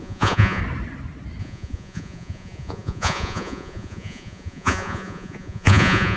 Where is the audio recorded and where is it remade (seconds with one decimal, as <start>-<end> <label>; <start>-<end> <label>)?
0.0-0.6 remade; 0.6-1.4 recorded; 1.4-6.2 remade